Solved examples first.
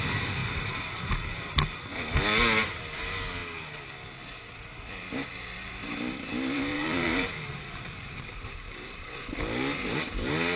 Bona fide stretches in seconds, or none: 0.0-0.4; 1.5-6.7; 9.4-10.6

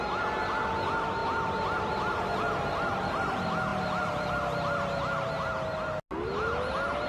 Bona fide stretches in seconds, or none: 0.0-3.7; 4.3-7.1

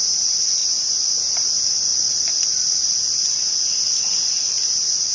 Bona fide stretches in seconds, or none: 0.0-1.9

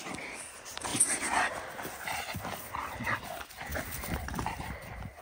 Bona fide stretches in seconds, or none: 0.0-0.9; 1.6-5.2

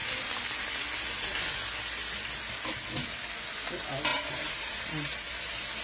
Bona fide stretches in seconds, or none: 0.0-4.1; 5.3-5.8

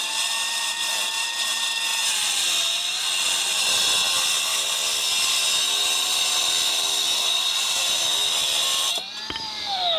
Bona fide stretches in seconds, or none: 1.9-6.7

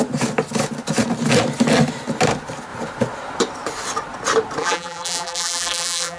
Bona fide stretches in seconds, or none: 0.0-4.6